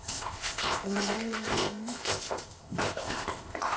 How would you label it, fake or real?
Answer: fake